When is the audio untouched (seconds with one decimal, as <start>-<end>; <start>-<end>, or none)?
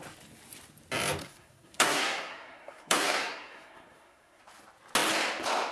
0.0-1.2; 4.4-5.7